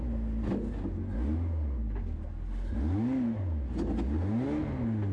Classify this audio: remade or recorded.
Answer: recorded